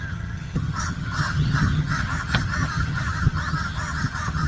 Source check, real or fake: fake